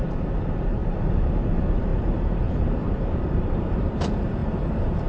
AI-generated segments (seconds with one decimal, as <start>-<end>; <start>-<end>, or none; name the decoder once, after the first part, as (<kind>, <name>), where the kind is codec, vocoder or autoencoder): 0.0-1.9 (vocoder, BigVGAN v2); 2.6-4.4